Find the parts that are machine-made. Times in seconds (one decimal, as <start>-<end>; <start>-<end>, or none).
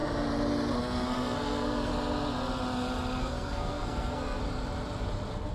0.8-1.9; 3.2-4.4